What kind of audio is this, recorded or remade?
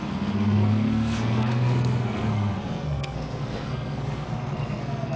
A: remade